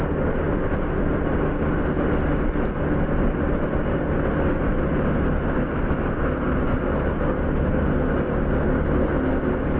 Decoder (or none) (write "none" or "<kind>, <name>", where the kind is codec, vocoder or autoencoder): none